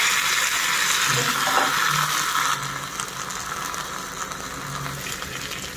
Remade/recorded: recorded